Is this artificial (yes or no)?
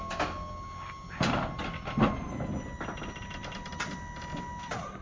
no